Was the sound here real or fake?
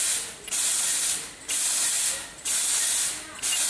real